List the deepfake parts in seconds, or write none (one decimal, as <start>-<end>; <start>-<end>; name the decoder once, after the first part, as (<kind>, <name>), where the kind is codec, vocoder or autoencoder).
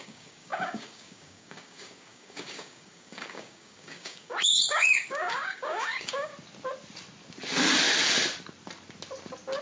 0.0-6.3 (codec, DAC)